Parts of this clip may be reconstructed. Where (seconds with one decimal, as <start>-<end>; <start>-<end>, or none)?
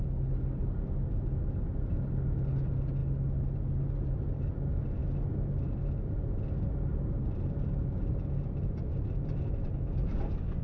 none